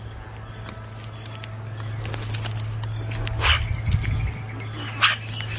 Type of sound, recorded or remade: recorded